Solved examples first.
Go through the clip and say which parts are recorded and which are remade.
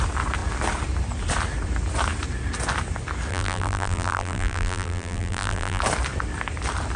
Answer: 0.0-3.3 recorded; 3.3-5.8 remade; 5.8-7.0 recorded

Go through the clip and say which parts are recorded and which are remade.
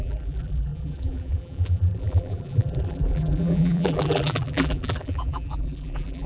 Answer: 0.0-6.3 remade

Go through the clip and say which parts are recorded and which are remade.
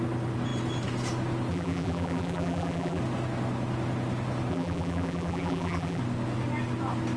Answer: 0.0-1.5 recorded; 1.5-3.0 remade; 3.0-4.5 recorded; 4.5-6.0 remade; 6.0-7.2 recorded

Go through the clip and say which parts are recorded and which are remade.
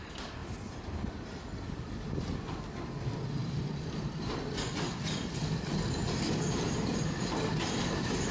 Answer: 0.0-3.4 recorded; 3.4-4.3 remade; 4.3-6.0 recorded; 6.0-8.3 remade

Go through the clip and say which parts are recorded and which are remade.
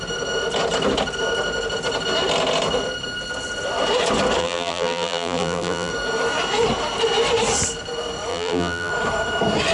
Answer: 0.0-4.4 recorded; 4.4-5.9 remade; 5.9-8.3 recorded; 8.3-8.9 remade; 8.9-9.7 recorded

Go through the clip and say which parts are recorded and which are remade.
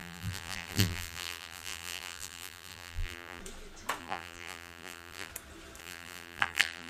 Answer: 0.0-3.4 remade; 3.4-4.0 recorded; 4.0-5.3 remade; 5.3-5.8 recorded; 5.8-6.9 remade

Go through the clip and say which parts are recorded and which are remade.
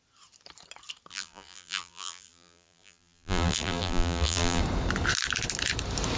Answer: 0.0-1.1 recorded; 1.1-4.6 remade; 4.6-6.2 recorded